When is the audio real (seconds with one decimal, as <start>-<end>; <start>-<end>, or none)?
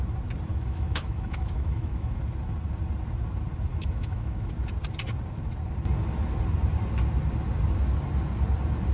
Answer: 0.0-0.5; 2.2-3.7; 4.5-8.9